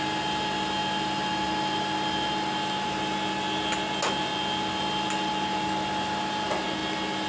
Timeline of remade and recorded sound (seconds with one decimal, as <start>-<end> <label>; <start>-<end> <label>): 0.0-7.3 recorded